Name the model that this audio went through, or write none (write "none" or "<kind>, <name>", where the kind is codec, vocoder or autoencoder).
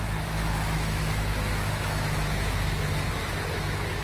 autoencoder, DAC-VAE